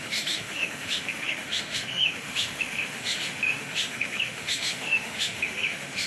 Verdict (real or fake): fake